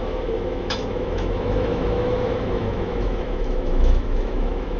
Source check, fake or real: fake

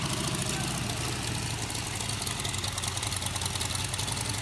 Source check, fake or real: real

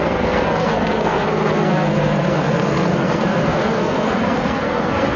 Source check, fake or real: fake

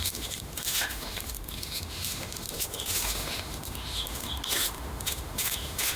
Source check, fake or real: fake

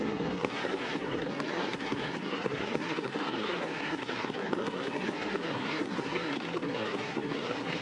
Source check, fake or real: fake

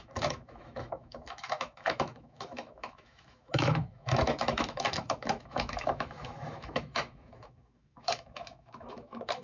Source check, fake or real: fake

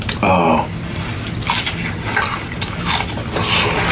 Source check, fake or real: real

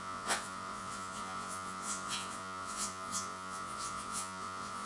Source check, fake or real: fake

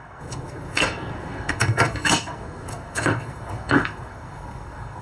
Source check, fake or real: fake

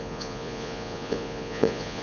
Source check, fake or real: fake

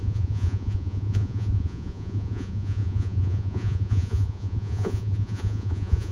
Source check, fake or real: fake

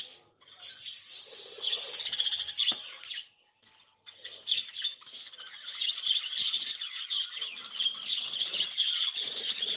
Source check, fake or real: real